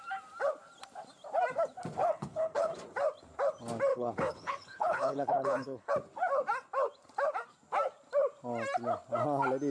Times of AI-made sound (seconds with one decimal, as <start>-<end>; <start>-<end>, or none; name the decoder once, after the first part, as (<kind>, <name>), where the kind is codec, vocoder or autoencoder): 2.0-2.7 (codec, HILCodec); 3.9-5.9

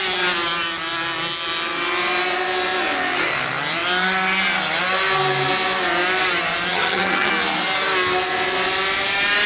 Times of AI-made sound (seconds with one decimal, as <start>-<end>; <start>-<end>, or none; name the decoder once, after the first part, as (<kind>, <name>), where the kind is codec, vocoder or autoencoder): 6.7-7.3 (vocoder, HiFi-GAN)

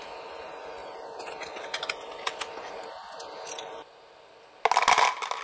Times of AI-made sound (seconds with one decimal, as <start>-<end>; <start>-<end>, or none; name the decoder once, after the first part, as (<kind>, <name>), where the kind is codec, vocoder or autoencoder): none

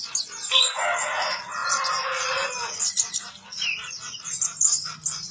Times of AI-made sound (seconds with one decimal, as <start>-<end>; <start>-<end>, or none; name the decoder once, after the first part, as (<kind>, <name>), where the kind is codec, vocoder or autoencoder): none